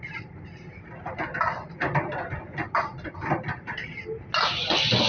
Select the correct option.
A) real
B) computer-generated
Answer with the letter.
A